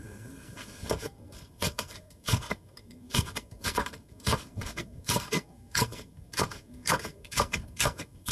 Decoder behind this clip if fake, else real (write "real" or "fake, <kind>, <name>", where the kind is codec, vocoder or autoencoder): fake, codec, SNAC